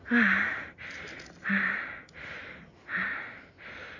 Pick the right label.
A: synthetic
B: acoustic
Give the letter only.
B